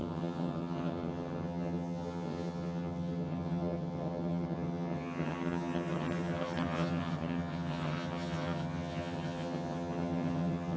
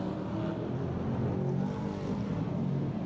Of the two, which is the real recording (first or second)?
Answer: second